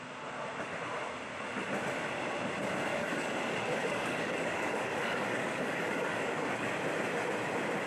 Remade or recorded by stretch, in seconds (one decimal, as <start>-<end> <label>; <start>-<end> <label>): 0.0-2.9 recorded; 2.9-6.7 remade; 6.7-7.9 recorded